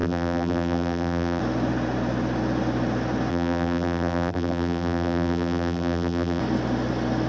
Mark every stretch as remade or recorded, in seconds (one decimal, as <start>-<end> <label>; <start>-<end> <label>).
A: 0.0-1.4 remade; 1.4-3.3 recorded; 3.3-6.4 remade; 6.4-7.3 recorded